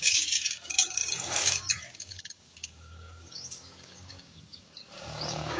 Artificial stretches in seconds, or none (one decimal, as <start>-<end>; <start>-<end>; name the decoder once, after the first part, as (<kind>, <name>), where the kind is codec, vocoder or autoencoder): 0.0-5.6 (codec, DAC)